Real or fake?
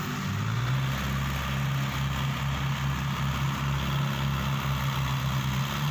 real